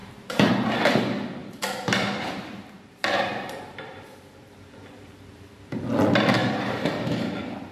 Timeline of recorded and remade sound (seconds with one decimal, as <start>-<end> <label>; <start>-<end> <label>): 0.0-0.5 remade; 0.5-1.4 recorded; 1.4-5.8 remade; 5.8-6.4 recorded; 6.4-7.1 remade; 7.1-7.7 recorded